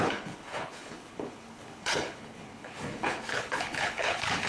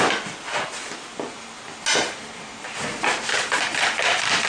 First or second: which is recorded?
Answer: second